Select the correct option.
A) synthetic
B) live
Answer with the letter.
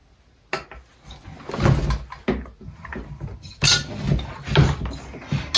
B